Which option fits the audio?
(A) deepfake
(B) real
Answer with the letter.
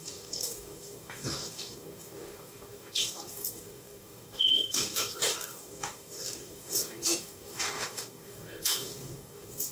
A